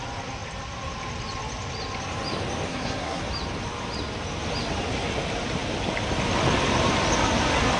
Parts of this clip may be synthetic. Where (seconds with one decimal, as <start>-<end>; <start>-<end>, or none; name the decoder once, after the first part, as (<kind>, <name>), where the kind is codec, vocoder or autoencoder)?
2.7-3.2 (codec, SNAC)